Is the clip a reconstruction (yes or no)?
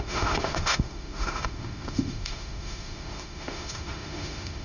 yes